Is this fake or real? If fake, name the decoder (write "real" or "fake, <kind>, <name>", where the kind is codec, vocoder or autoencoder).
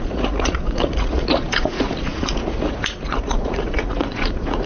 fake, vocoder, Vocos